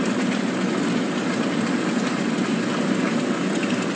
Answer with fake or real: real